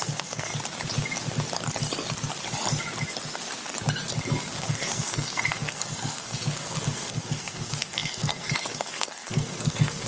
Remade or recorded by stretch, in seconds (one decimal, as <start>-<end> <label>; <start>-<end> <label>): 0.0-0.5 remade; 0.5-4.6 recorded; 4.6-10.1 remade